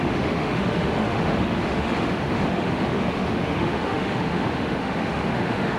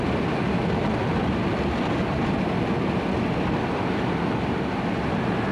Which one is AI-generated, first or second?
first